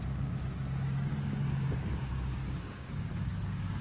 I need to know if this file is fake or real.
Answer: fake